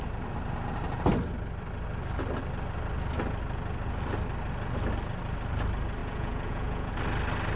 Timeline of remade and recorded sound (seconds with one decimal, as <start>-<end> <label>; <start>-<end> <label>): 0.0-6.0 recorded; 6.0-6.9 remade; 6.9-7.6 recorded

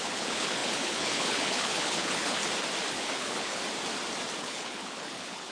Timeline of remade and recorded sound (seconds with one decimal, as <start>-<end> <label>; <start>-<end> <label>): 0.0-2.4 remade; 2.4-2.9 recorded; 2.9-3.6 remade; 3.6-4.4 recorded; 4.4-5.5 remade

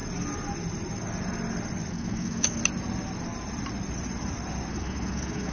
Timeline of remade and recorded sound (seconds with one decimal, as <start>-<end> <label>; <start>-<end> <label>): 0.0-1.9 recorded; 1.9-2.6 remade; 2.6-4.7 recorded; 4.7-5.5 remade

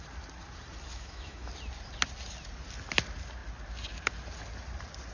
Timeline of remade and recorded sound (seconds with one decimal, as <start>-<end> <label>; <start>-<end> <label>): 0.0-0.9 recorded; 0.9-1.5 remade; 1.5-5.1 recorded

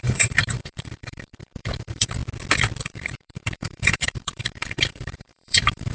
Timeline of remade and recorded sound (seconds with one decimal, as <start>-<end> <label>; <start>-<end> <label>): 0.0-2.2 remade; 2.2-2.8 recorded; 2.8-5.9 remade

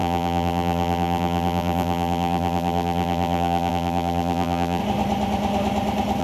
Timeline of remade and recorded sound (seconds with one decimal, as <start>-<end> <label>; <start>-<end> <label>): 0.0-4.8 remade; 4.8-6.2 recorded

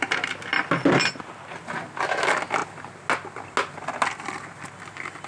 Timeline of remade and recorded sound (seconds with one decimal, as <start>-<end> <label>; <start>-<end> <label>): 0.0-5.3 recorded